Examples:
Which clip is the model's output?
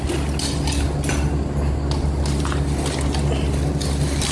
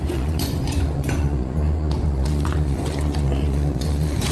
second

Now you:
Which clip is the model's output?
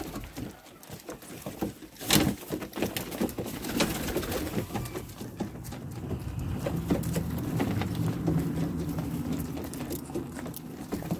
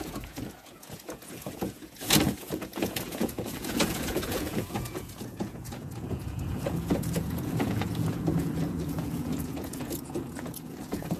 second